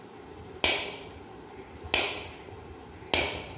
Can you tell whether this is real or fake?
real